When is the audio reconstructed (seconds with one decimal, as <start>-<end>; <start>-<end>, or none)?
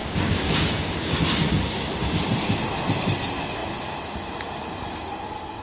0.0-1.2